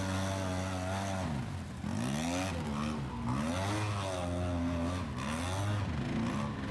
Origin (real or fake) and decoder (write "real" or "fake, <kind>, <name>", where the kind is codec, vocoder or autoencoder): real